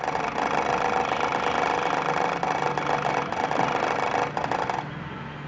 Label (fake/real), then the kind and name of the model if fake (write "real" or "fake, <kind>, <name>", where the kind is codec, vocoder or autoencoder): real